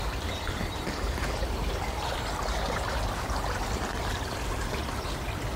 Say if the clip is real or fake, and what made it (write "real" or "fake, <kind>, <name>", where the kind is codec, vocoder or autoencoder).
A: fake, vocoder, BigVGAN v2